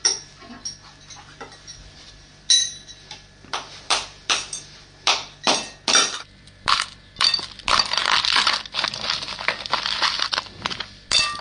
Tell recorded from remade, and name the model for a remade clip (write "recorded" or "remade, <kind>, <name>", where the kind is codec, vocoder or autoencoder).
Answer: recorded